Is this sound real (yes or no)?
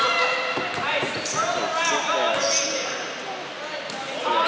yes